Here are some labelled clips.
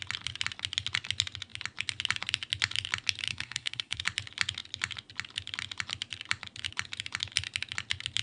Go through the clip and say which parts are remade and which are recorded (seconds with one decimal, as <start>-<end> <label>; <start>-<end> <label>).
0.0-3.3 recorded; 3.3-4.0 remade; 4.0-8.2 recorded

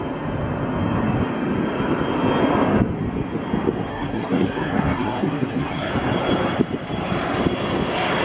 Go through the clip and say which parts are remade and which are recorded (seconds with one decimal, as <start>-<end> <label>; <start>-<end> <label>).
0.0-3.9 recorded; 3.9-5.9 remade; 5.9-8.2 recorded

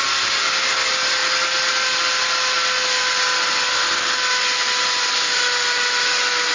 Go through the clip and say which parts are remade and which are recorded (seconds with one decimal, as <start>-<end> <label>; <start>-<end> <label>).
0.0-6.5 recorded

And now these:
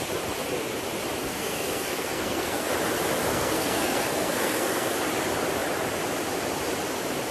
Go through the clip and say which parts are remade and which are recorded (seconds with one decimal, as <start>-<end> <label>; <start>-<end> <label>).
0.0-1.2 recorded; 1.2-2.7 remade; 2.7-3.3 recorded; 3.3-4.9 remade; 4.9-7.3 recorded

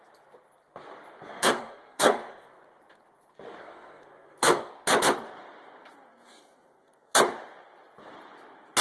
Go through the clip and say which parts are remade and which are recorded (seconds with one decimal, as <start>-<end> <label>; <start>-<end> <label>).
0.0-1.2 recorded; 1.2-2.6 remade; 2.6-3.6 recorded; 3.6-4.7 remade; 4.7-6.1 recorded; 6.1-7.2 remade; 7.2-8.8 recorded